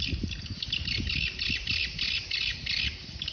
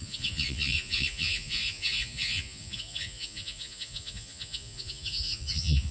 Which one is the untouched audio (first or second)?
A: first